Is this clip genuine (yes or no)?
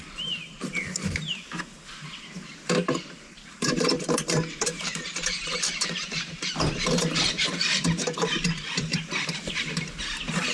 no